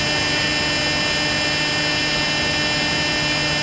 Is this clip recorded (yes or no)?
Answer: yes